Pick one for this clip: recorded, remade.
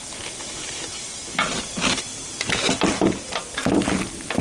recorded